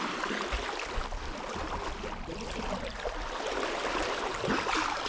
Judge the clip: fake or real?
real